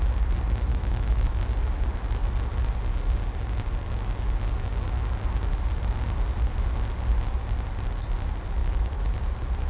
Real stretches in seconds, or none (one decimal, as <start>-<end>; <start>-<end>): 0.0-0.7; 1.4-8.6; 9.2-9.7